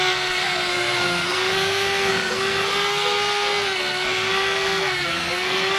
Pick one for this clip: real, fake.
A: fake